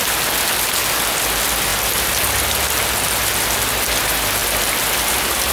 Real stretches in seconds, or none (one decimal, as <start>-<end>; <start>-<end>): 0.0-5.5

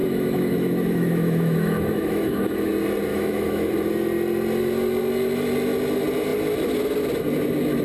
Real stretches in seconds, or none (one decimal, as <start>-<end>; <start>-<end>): 2.7-3.1; 3.7-7.8

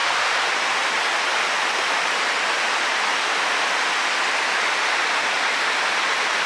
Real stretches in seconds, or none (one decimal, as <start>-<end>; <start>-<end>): 1.0-6.5

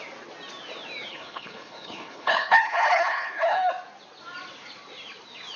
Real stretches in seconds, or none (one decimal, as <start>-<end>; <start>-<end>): 0.0-1.1; 3.7-5.6

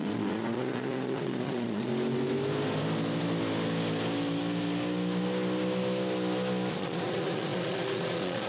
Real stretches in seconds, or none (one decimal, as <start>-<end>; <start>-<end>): 1.9-6.7